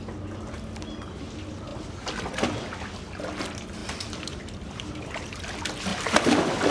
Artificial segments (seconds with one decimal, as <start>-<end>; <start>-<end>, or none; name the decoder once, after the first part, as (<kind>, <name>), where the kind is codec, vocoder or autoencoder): 1.7-2.4 (vocoder, BigVGAN v2); 3.8-5.1; 5.9-6.7